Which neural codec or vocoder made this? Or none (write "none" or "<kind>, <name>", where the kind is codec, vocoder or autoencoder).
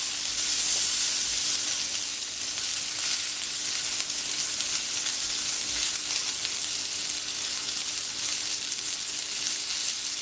none